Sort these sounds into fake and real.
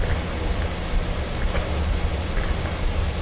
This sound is real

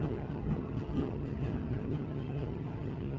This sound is fake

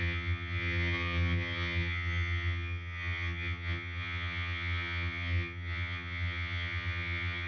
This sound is fake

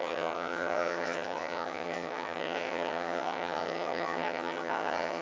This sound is fake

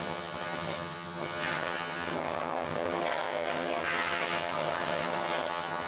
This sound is fake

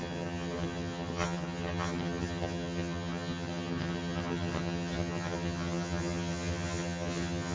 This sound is fake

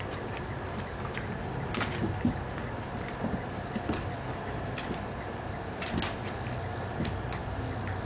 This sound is real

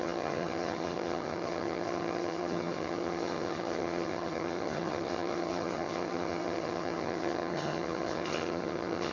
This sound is fake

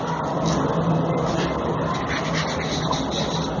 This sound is real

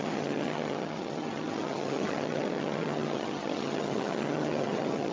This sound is fake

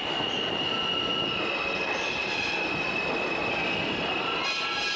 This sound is real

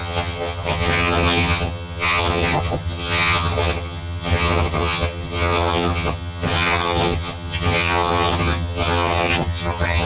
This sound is fake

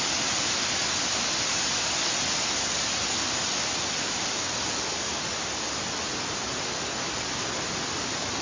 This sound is real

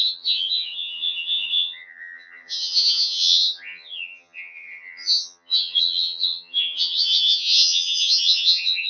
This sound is fake